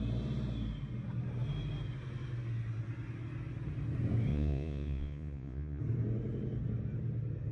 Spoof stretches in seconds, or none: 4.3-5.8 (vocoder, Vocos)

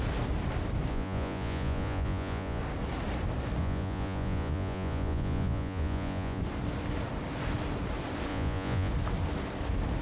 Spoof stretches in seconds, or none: 0.9-2.6 (vocoder, Vocos); 3.6-6.4; 8.3-8.9

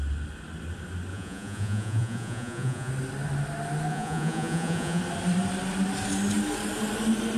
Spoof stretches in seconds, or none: 1.1-2.9 (vocoder, Vocos); 3.9-5.0